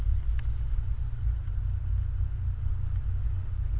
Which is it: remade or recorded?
recorded